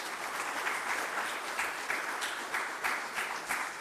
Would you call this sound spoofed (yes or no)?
no